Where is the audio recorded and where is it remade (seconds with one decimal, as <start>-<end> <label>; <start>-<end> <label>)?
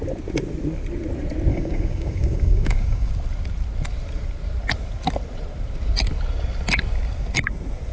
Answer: 0.0-1.5 recorded; 1.5-3.1 remade; 3.1-7.9 recorded